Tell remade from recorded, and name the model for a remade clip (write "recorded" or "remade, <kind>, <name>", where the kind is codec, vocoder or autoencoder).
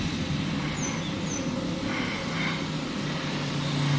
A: recorded